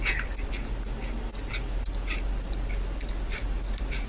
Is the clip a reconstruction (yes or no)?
no